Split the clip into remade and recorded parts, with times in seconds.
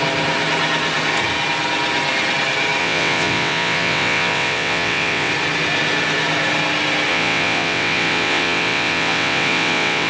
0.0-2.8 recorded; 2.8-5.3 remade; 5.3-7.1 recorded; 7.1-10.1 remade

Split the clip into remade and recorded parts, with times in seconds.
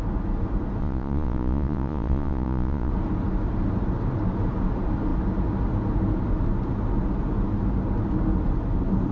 0.0-0.8 recorded; 0.8-2.9 remade; 2.9-9.1 recorded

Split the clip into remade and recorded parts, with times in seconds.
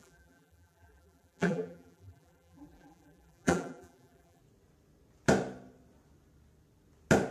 0.0-4.4 remade; 4.4-7.3 recorded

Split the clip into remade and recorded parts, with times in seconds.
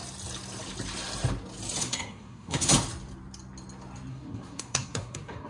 0.0-1.8 recorded; 1.8-2.7 remade; 2.7-4.1 recorded; 4.1-5.5 remade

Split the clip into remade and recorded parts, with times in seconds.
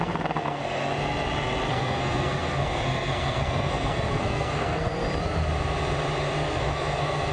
0.0-0.6 remade; 0.6-1.7 recorded; 1.7-4.9 remade; 4.9-6.7 recorded; 6.7-7.3 remade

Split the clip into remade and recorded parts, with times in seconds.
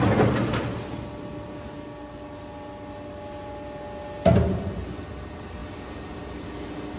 0.0-7.0 recorded